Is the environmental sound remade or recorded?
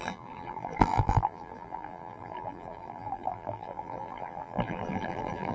remade